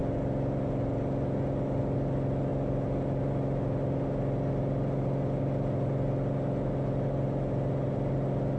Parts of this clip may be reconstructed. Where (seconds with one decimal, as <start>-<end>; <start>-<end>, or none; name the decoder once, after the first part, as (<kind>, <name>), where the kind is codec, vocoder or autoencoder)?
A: none